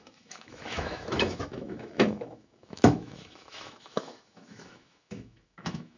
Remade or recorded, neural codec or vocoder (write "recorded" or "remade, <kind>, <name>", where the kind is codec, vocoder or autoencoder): remade, autoencoder, DAC-VAE